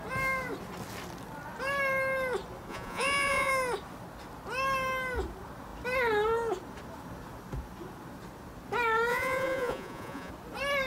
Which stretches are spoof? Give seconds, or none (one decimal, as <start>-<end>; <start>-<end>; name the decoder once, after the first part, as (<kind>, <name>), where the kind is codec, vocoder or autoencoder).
2.7-3.5 (vocoder, Vocos); 9.1-10.3